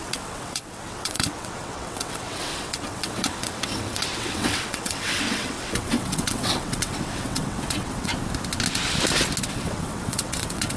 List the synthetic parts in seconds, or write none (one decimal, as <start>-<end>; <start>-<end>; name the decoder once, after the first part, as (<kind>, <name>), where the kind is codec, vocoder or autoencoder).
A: 0.0-8.1 (vocoder, WaveNeXt); 9.4-10.8